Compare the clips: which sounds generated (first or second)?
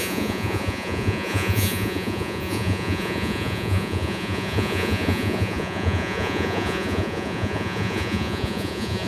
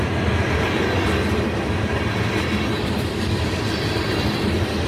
first